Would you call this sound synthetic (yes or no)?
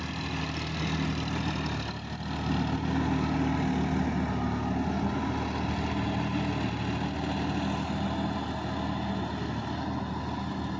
no